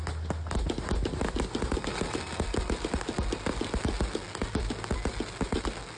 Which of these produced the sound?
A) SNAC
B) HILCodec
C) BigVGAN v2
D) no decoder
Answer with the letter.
D